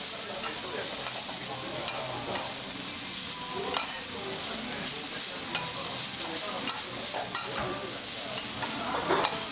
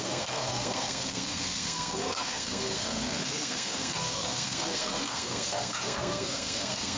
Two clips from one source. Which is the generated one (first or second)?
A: second